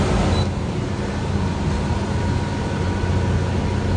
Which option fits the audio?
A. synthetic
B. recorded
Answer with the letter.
B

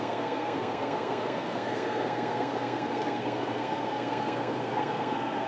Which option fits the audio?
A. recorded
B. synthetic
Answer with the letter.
B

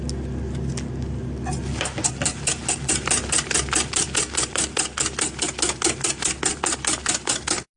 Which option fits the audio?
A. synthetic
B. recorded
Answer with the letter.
B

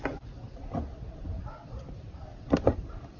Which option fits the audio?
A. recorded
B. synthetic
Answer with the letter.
A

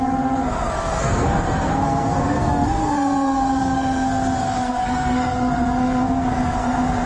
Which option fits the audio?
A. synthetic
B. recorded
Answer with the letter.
A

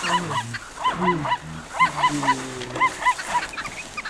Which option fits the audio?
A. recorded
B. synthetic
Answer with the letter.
A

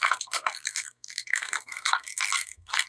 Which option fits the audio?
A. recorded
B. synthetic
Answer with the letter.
B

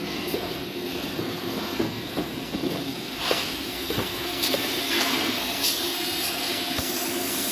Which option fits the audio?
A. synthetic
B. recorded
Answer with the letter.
A